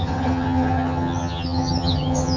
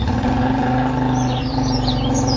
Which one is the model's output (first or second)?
first